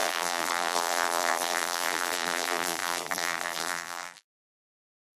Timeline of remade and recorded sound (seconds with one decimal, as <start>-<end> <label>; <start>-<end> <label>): 0.0-5.2 remade